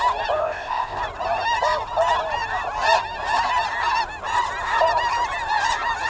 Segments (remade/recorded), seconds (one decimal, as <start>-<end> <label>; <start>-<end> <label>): 0.0-0.4 recorded; 0.4-1.0 remade; 1.0-6.1 recorded